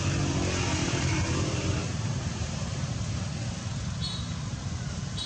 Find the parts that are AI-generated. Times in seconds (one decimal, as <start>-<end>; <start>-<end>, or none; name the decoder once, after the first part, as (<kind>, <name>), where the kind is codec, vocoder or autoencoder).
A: 0.8-2.9 (vocoder, BigVGAN v2)